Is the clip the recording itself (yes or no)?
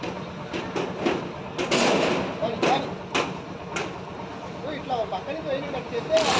yes